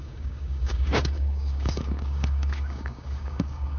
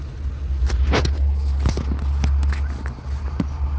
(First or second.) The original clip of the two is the second